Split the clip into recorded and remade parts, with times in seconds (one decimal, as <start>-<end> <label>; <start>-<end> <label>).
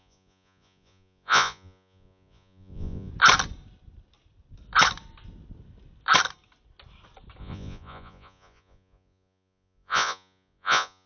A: 0.0-3.1 remade; 3.1-7.4 recorded; 7.4-11.1 remade